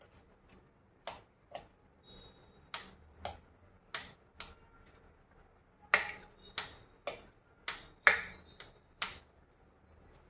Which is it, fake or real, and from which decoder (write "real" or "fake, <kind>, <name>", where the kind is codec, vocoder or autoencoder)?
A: real